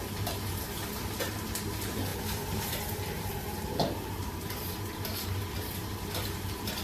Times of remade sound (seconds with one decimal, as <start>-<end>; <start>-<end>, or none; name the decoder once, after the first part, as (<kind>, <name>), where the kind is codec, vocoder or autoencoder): 0.0-6.8 (vocoder, BigVGAN v2)